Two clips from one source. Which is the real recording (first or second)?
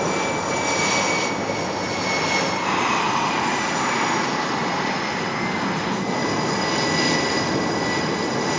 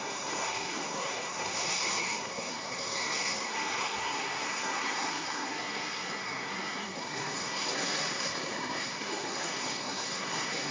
first